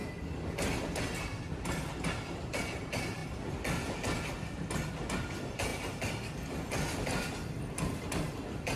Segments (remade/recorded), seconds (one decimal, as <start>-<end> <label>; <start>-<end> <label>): 0.0-8.8 recorded